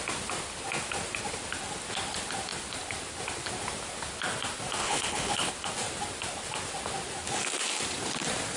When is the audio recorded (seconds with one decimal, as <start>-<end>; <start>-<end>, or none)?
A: 0.0-4.8; 5.5-8.6